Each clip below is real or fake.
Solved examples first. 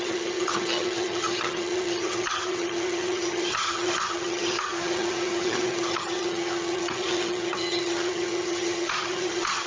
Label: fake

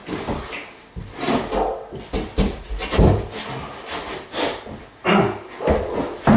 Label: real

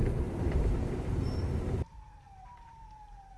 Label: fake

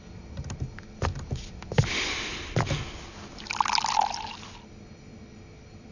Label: real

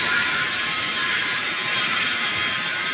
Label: fake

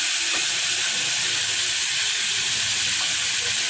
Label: real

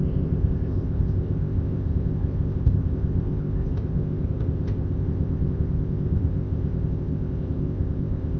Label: fake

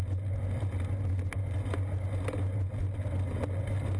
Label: real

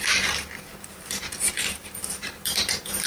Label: fake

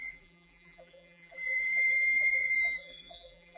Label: fake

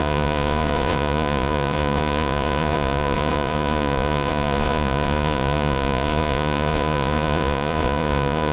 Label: fake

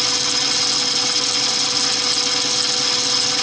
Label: real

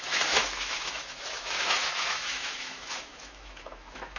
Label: fake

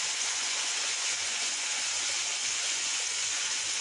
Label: fake